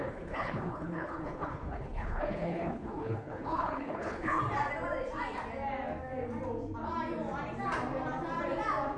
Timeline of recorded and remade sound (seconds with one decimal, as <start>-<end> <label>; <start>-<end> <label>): 0.0-4.4 remade; 4.4-9.0 recorded